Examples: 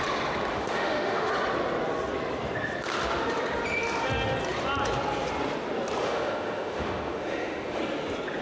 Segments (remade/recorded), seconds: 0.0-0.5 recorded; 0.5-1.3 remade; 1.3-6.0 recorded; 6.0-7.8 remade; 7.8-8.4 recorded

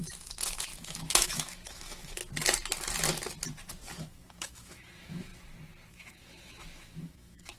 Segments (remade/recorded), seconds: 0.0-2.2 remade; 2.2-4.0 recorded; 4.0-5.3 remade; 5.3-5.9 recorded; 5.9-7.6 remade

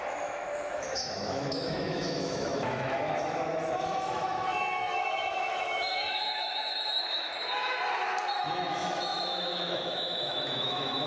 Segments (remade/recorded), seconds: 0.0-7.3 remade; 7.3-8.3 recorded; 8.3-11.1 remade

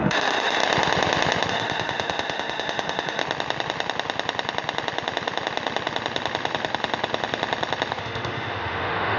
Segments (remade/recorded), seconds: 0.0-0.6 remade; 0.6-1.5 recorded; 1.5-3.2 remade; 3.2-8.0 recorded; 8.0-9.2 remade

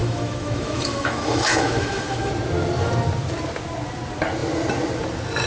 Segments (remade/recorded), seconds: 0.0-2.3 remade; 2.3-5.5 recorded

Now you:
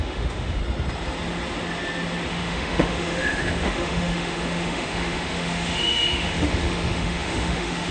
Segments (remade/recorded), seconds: 0.0-0.6 remade; 0.6-2.3 recorded; 2.3-7.9 remade